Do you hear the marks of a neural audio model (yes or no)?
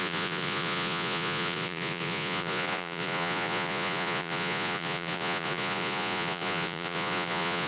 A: yes